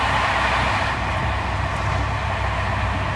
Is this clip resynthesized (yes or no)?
no